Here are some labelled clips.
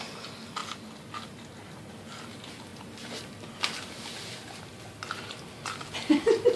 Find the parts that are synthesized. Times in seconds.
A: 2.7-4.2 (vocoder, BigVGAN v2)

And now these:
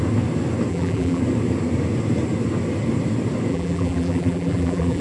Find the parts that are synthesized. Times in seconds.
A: 0.7-1.2 (vocoder, BigVGAN v2); 3.5-5.0

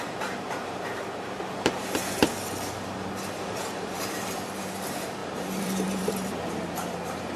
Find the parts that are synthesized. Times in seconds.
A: 0.0-2.2 (vocoder, BigVGAN v2); 3.3-7.4

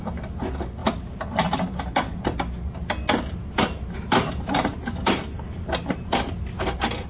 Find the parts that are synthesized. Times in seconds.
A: 0.8-1.8 (vocoder, BigVGAN v2); 3.4-6.2

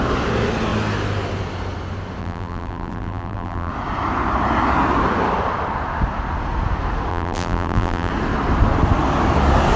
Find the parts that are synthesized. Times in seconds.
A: 2.2-3.7 (vocoder, BigVGAN v2); 7.1-8.1

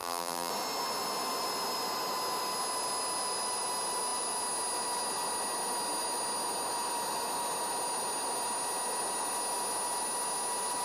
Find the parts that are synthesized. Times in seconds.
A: 0.0-0.5 (vocoder, BigVGAN v2)

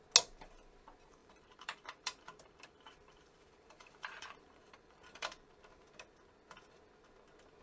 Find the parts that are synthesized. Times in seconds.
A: 1.2-5.7 (vocoder, BigVGAN v2)

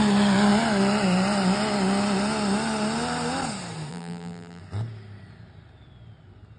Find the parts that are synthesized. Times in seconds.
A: 3.9-4.6 (vocoder, BigVGAN v2)